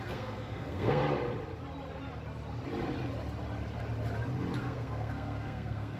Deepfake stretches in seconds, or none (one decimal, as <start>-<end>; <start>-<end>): 0.0-1.0; 4.6-6.0